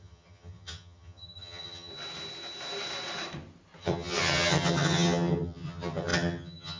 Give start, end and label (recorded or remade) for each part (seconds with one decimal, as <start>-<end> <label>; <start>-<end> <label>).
0.0-1.9 remade; 1.9-3.8 recorded; 3.8-6.8 remade